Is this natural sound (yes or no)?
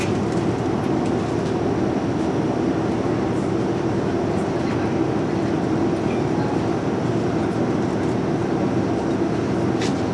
yes